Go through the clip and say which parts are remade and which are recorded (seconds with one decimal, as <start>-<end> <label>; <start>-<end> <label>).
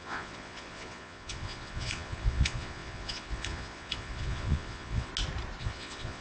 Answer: 0.0-5.1 remade; 5.1-5.6 recorded; 5.6-6.2 remade